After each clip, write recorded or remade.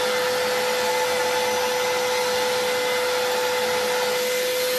recorded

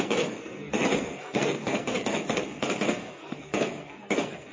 remade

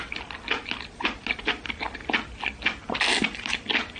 recorded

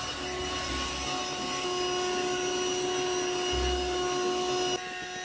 recorded